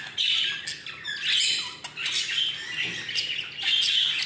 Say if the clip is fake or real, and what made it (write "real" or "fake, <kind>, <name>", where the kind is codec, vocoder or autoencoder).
real